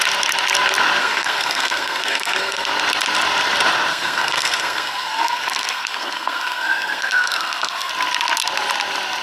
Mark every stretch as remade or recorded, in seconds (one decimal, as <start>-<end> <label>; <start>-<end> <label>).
0.0-1.0 recorded; 1.0-2.7 remade; 2.7-3.9 recorded; 3.9-7.9 remade; 7.9-9.2 recorded